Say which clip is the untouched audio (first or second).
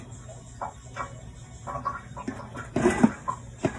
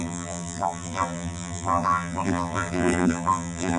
first